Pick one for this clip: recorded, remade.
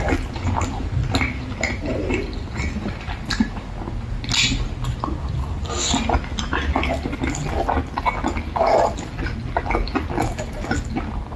recorded